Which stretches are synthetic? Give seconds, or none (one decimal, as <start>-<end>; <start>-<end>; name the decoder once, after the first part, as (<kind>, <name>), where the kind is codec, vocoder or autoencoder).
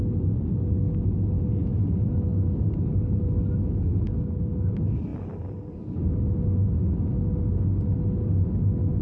none